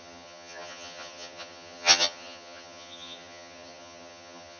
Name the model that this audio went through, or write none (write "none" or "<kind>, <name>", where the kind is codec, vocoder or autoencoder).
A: vocoder, HiFi-GAN